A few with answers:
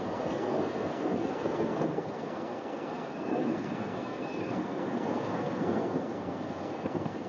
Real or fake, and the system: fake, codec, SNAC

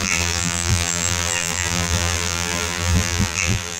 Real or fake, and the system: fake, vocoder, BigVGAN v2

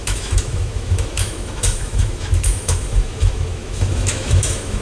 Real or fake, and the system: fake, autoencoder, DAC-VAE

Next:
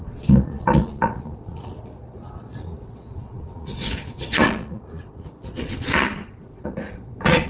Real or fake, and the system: fake, vocoder, Vocos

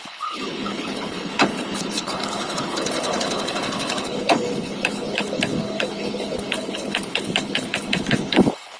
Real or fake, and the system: fake, codec, HILCodec